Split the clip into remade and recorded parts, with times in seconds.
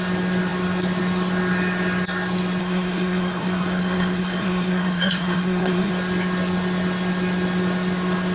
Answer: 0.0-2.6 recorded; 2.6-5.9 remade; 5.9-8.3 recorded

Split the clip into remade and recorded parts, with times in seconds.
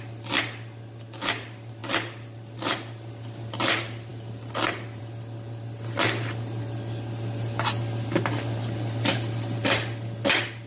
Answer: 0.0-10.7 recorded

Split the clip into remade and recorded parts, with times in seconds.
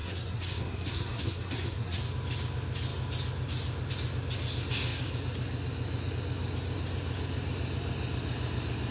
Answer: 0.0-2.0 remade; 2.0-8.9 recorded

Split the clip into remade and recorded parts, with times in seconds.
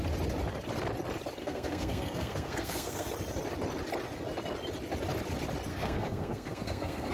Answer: 0.0-1.4 recorded; 1.4-3.1 remade; 3.1-5.7 recorded; 5.7-7.1 remade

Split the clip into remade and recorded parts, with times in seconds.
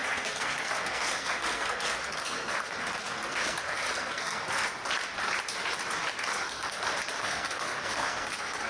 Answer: 0.0-4.7 remade; 4.7-6.3 recorded; 6.3-6.8 remade; 6.8-7.2 recorded; 7.2-8.7 remade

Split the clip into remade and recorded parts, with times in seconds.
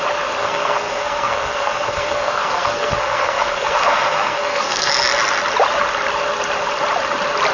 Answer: 0.0-0.4 recorded; 0.4-4.9 remade; 4.9-7.5 recorded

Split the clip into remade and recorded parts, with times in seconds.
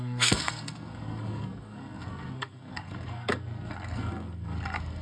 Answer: 0.0-5.0 remade